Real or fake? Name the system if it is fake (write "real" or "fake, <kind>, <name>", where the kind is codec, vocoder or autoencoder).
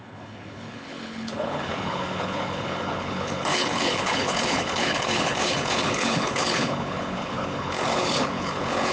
fake, codec, HILCodec